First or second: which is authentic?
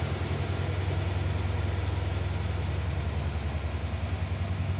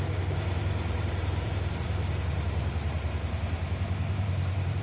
first